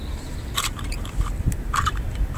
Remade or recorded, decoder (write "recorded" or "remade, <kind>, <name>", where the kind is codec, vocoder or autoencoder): remade, vocoder, BigVGAN v2